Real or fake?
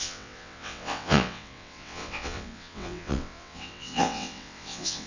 fake